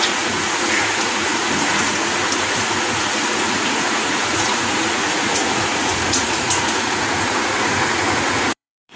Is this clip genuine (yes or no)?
no